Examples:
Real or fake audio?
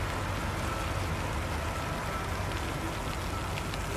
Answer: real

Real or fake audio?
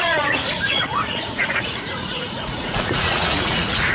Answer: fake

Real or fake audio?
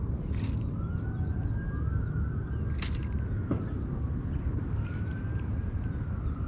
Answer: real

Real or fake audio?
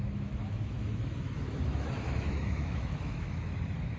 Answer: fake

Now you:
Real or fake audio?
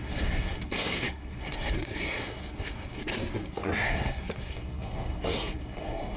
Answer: fake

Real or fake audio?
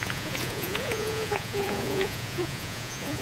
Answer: fake